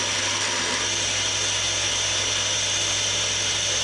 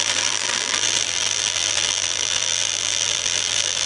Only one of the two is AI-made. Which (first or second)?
second